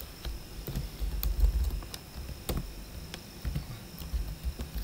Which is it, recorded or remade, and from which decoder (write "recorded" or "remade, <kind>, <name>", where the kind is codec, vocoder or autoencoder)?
recorded